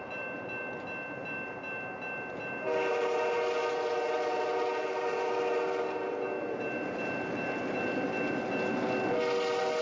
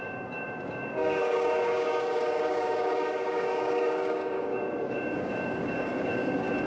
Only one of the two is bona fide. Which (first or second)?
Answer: first